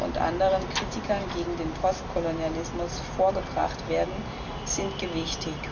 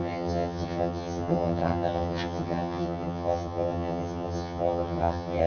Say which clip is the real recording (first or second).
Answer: first